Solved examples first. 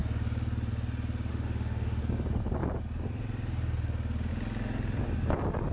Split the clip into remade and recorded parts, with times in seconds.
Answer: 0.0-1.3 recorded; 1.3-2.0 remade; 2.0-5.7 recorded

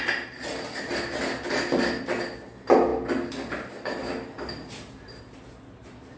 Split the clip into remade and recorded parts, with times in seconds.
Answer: 0.0-6.2 recorded

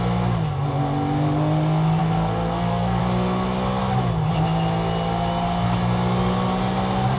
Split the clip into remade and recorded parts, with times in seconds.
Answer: 0.0-2.0 recorded; 2.0-3.0 remade; 3.0-7.2 recorded

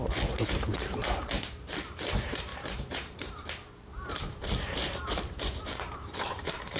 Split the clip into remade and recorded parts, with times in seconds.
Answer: 0.0-1.0 remade; 1.0-1.5 recorded; 1.5-6.8 remade